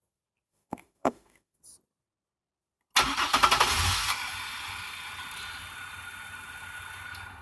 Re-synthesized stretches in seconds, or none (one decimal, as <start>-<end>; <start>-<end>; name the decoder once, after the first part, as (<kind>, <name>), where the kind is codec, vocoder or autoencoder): 0.5-1.6 (autoencoder, DAC-VAE)